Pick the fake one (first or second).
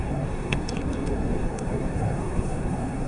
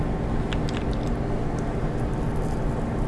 first